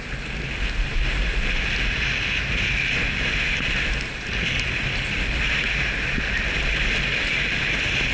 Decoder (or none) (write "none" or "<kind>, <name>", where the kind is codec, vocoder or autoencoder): none